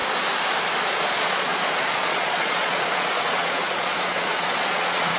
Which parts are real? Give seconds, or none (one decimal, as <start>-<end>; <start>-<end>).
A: 0.0-0.9